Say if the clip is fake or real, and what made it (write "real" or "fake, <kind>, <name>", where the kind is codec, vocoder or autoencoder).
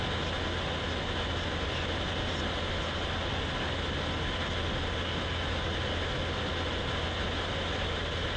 real